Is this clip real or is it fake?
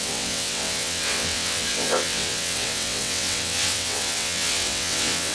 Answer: fake